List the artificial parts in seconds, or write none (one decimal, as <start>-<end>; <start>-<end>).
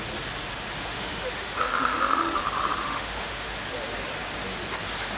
0.9-2.4; 2.8-3.5